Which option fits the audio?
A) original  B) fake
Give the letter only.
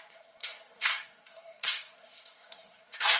B